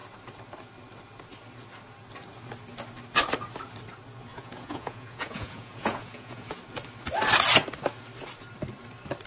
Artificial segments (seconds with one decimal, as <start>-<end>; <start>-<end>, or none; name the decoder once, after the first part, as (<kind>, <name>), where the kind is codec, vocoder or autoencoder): 4.3-6.6 (vocoder, Vocos)